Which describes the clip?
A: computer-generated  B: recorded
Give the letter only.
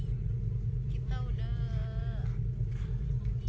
B